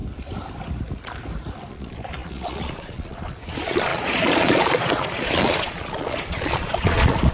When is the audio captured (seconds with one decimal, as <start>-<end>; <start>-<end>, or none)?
0.0-1.7